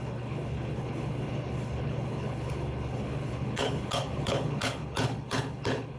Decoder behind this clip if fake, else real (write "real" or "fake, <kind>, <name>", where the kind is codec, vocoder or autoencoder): fake, codec, HILCodec